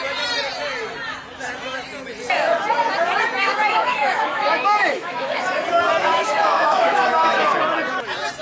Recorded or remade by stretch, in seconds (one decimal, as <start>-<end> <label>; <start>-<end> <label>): 0.0-3.4 recorded; 3.4-5.4 remade; 5.4-6.0 recorded; 6.0-7.5 remade; 7.5-8.4 recorded